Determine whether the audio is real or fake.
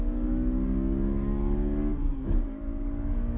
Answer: fake